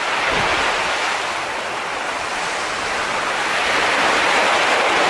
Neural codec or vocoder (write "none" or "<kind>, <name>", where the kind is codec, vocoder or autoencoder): none